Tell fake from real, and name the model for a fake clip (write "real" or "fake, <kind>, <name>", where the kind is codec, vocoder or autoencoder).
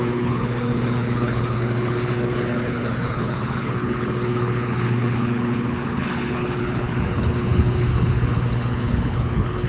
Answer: fake, codec, HILCodec